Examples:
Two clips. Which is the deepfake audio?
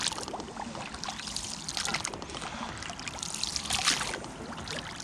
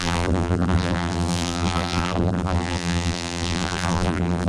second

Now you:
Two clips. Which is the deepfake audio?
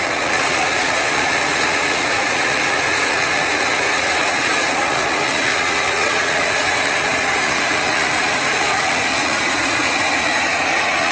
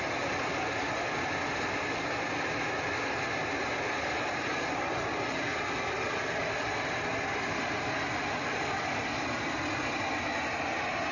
first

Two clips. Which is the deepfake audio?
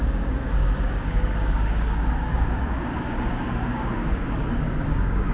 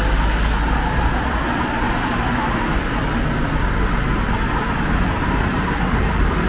first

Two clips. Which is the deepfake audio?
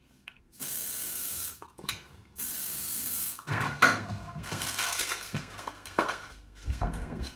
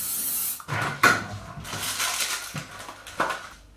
first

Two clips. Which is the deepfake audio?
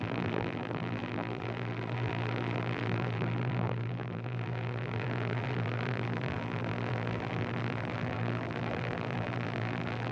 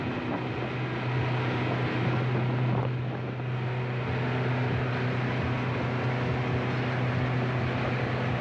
first